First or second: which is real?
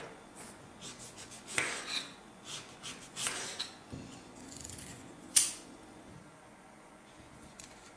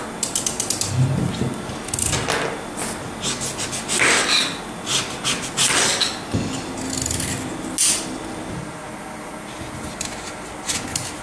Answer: second